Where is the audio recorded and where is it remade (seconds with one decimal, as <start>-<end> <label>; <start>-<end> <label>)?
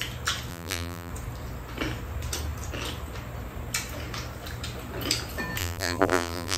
0.0-0.5 recorded; 0.5-1.1 remade; 1.1-5.6 recorded; 5.6-6.6 remade